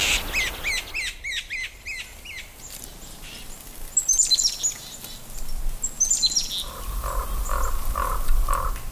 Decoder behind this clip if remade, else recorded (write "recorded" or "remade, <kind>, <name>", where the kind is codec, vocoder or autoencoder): recorded